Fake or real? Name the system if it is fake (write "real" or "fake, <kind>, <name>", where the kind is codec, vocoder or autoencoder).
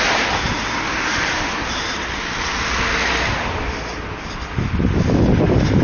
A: fake, vocoder, BigVGAN v2